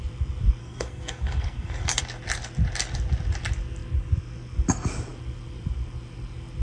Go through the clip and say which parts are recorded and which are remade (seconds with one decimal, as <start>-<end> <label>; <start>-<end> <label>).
0.0-0.6 recorded; 0.6-2.0 remade; 2.0-6.6 recorded